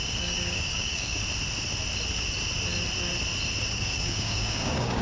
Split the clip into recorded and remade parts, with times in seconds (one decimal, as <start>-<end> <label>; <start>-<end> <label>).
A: 0.0-1.2 remade; 1.2-3.7 recorded; 3.7-5.0 remade